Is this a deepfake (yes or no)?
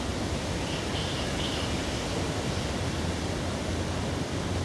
no